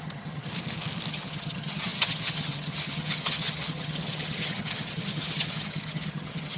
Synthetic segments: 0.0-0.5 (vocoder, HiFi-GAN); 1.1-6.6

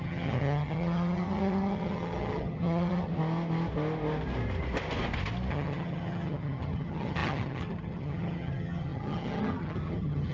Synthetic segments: 0.0-3.1 (vocoder, HiFi-GAN); 5.5-10.3

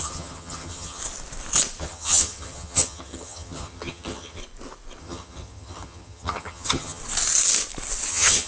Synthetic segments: 0.0-1.0 (vocoder, HiFi-GAN); 1.8-4.4; 5.0-7.0; 8.1-8.5

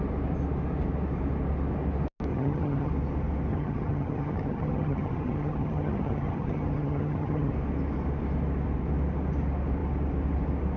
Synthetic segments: 2.3-2.9 (vocoder, HiFi-GAN); 3.5-7.5

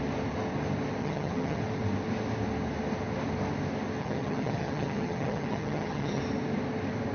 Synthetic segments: 1.0-1.6 (vocoder, HiFi-GAN); 4.0-6.2

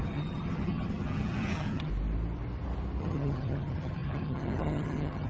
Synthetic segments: 0.0-1.9 (vocoder, HiFi-GAN); 3.0-5.3

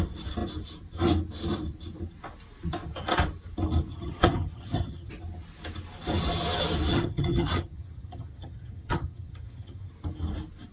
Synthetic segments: 3.9-5.1 (vocoder, HiFi-GAN); 6.9-9.9